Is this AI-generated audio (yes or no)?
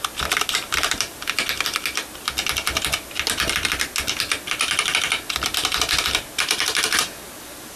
no